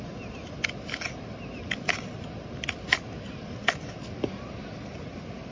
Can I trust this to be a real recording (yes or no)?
yes